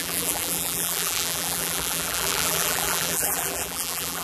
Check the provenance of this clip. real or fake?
fake